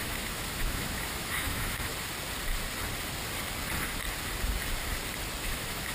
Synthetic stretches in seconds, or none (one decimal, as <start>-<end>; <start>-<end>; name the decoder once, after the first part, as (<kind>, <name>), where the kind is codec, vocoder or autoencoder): 0.0-1.9 (autoencoder, DAC-VAE); 5.4-5.9